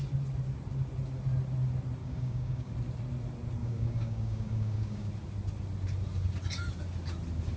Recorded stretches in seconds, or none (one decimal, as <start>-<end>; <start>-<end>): 0.0-2.0; 2.7-3.6; 5.1-7.6